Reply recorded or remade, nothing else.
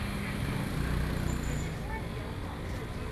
recorded